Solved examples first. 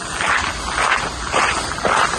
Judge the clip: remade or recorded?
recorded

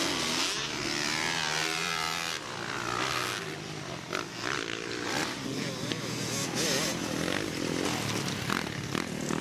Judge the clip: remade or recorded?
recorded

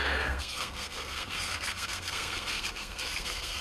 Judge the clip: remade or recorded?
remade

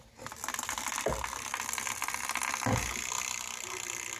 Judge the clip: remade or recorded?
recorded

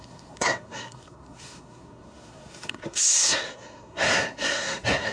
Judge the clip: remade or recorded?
remade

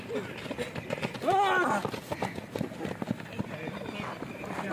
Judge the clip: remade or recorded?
recorded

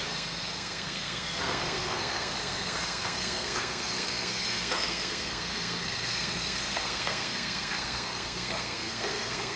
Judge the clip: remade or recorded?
remade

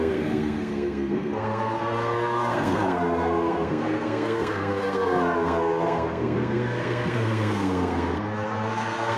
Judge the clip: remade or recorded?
remade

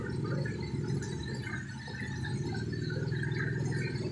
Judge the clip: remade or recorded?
recorded